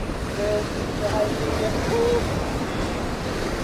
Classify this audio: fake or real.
real